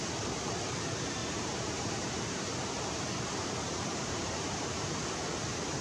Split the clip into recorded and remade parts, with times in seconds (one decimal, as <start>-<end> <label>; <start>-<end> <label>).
0.0-1.2 recorded; 1.2-4.7 remade; 4.7-5.8 recorded